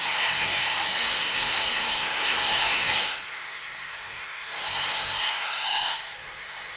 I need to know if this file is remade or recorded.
remade